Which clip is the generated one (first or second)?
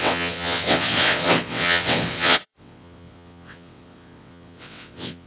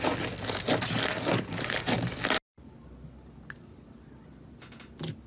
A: first